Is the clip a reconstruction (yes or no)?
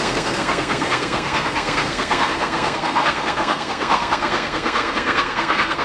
yes